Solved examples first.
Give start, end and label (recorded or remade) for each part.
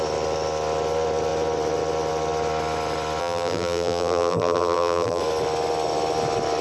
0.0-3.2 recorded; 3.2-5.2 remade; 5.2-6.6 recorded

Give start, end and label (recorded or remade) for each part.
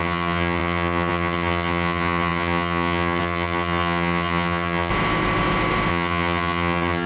0.0-4.9 remade; 4.9-5.9 recorded; 5.9-7.1 remade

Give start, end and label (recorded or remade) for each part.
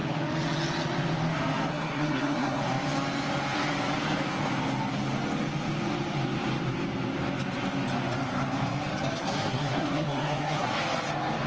0.0-1.7 recorded; 1.7-2.6 remade; 2.6-9.2 recorded; 9.2-10.7 remade; 10.7-11.5 recorded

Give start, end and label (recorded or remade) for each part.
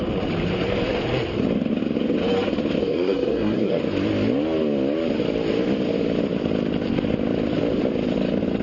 0.0-2.8 recorded; 2.8-3.8 remade; 3.8-8.6 recorded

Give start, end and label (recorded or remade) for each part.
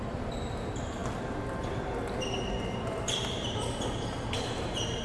0.0-1.0 remade; 1.0-2.8 recorded; 2.8-5.0 remade